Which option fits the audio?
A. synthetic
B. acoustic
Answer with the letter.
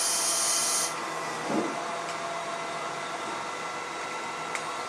B